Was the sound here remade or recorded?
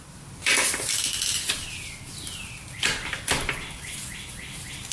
recorded